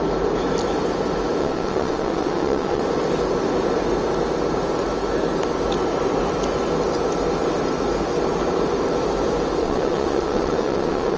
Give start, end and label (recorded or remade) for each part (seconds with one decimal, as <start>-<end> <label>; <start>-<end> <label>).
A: 0.0-1.4 recorded; 1.4-2.8 remade; 2.8-9.6 recorded; 9.6-11.2 remade